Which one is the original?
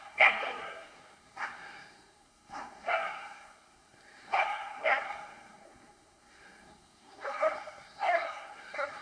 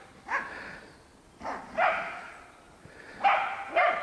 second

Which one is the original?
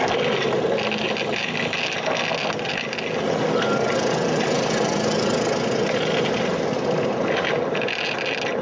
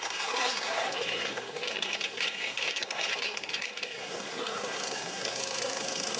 first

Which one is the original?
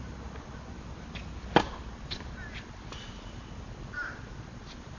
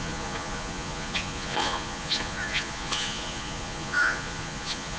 first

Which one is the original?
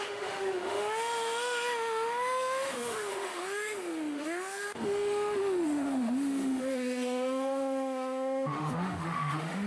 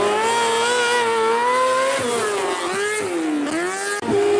second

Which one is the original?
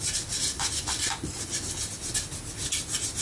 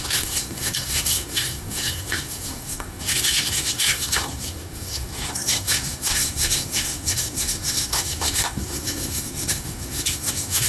first